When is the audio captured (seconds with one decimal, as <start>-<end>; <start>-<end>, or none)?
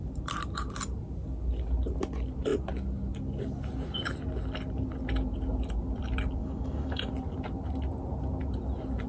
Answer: 0.0-6.4; 7.1-9.1